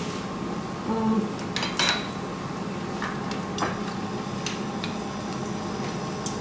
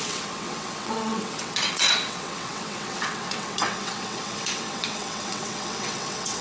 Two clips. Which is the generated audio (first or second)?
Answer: second